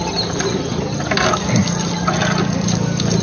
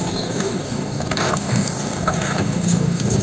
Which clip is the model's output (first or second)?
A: second